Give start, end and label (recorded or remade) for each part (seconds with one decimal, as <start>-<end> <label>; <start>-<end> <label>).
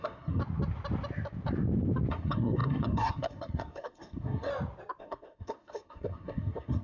0.0-0.4 remade; 0.4-2.1 recorded; 2.1-4.5 remade; 4.5-5.0 recorded; 5.0-6.8 remade